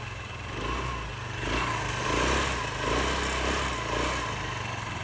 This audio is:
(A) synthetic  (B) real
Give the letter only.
B